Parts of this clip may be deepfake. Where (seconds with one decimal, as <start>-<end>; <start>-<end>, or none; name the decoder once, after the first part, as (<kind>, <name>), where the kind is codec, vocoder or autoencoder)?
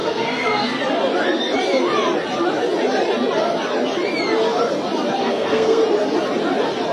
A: 0.0-0.8 (codec, SNAC); 5.2-5.8